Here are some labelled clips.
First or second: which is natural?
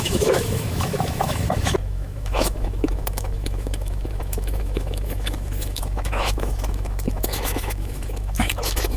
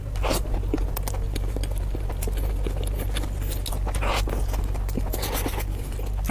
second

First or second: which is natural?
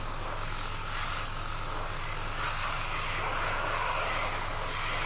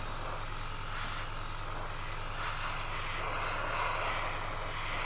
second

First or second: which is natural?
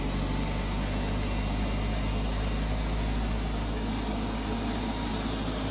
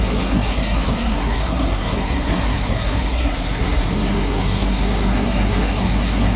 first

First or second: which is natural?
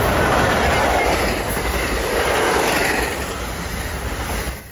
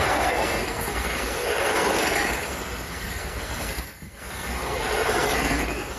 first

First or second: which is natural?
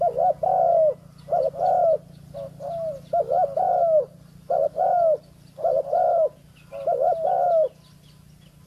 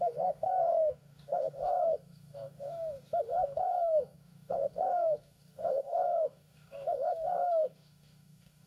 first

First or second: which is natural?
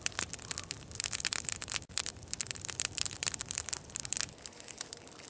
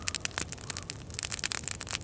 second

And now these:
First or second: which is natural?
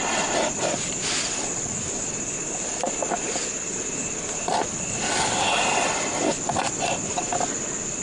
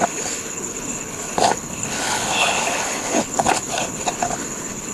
first